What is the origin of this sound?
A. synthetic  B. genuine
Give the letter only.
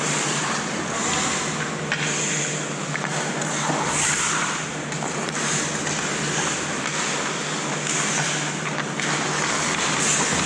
B